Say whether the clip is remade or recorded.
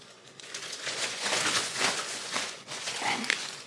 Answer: remade